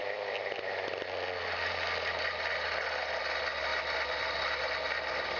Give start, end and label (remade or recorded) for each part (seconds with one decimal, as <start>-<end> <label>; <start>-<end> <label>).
0.0-5.4 recorded